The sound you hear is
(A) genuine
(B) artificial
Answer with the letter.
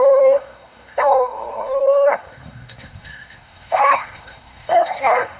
B